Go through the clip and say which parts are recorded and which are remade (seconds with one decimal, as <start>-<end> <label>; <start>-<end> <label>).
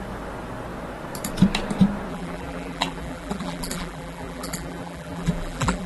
0.0-2.1 recorded; 2.1-5.9 remade